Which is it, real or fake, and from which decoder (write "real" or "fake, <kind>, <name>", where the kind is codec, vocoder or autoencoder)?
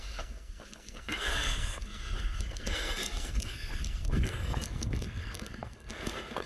fake, codec, SNAC